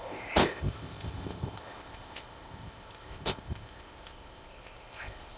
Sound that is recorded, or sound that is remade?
remade